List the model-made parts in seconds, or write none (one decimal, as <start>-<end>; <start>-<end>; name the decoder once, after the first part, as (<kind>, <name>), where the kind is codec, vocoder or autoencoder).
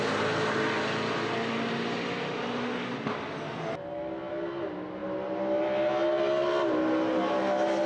none